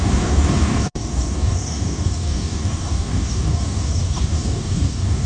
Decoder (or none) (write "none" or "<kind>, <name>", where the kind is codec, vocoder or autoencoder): codec, DAC